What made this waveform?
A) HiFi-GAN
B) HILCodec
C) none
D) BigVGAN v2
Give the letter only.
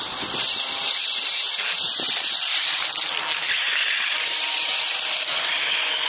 C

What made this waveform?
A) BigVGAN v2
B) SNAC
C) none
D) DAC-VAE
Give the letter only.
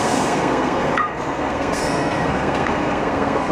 B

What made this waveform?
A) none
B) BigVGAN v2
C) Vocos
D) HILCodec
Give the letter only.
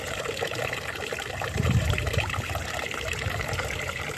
B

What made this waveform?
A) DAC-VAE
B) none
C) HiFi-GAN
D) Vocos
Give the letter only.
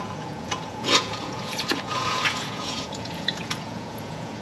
D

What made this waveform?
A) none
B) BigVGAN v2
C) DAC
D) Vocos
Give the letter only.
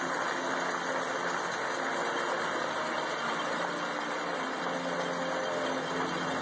A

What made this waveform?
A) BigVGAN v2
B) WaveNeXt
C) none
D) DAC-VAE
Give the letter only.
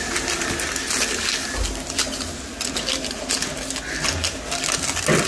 C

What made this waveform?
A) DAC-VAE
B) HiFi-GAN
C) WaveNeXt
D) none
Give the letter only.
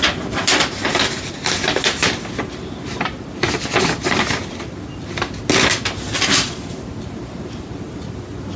D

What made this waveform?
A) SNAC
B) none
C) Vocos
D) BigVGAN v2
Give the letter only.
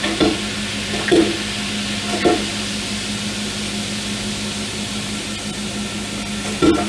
B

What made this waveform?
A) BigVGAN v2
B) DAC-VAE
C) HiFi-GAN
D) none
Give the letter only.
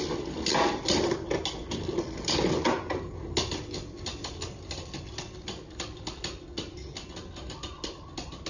D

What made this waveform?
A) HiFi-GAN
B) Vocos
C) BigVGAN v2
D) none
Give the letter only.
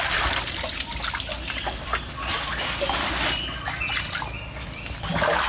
D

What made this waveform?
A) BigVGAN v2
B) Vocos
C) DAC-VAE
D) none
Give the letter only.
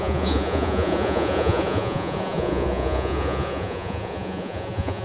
B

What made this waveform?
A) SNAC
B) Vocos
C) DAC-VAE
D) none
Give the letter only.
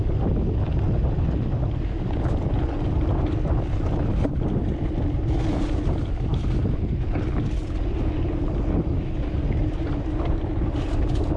D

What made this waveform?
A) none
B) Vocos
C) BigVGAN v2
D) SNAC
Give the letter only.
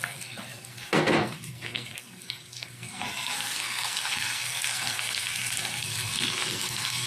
D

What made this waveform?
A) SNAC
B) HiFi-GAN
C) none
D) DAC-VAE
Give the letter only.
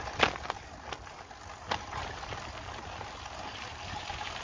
C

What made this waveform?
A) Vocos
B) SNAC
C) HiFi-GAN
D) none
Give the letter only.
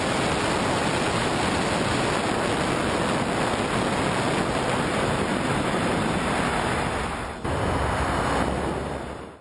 D